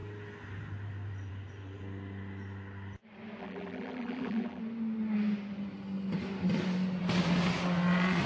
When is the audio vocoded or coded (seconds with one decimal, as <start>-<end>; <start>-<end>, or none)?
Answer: 3.4-4.6